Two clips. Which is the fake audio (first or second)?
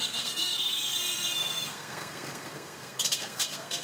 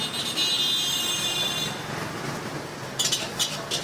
first